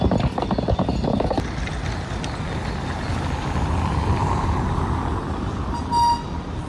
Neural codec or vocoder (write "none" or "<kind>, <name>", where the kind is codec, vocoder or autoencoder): none